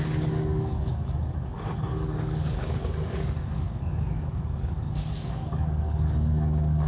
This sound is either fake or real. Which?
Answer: fake